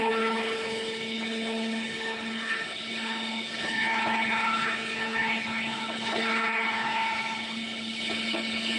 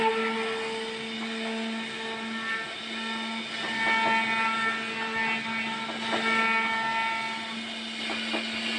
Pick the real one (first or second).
second